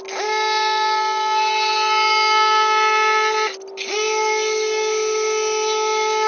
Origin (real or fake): real